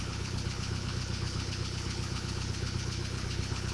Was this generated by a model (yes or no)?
yes